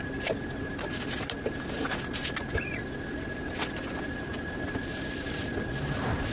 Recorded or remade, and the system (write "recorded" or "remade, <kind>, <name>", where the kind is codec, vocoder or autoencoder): recorded